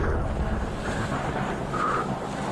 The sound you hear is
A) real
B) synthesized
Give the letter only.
A